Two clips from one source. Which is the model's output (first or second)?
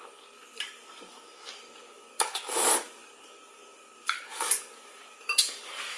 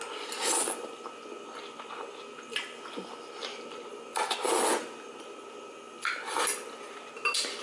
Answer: first